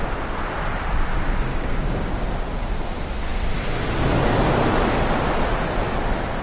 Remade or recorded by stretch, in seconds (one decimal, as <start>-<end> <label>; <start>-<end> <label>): 0.0-1.5 recorded; 1.5-2.4 remade; 2.4-6.4 recorded